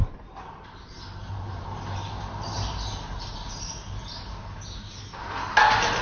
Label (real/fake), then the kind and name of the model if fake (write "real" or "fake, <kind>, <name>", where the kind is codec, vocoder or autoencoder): real